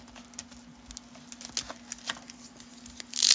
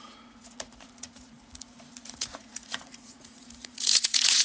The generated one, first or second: second